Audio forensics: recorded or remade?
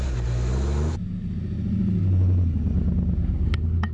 recorded